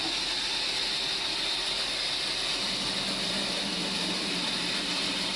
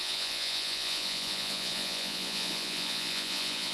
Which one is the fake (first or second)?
second